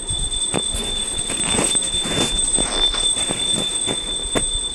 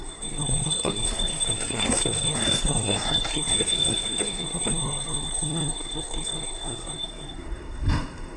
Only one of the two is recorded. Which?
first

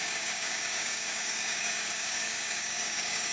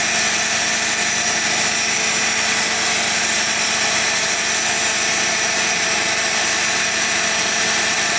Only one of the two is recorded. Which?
second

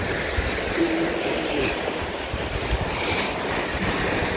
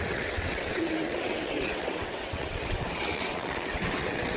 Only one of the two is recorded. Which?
first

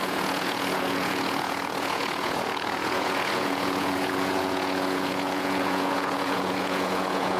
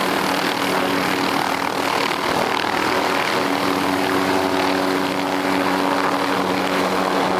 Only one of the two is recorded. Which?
second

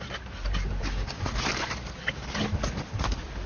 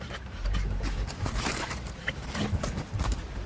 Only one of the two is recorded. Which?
first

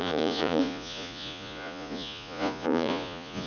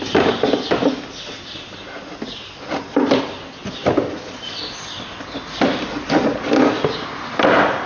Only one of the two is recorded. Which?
second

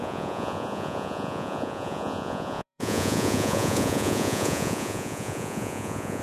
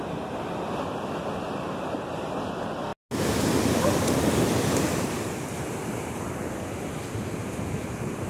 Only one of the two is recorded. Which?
second